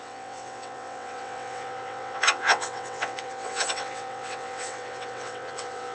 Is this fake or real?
fake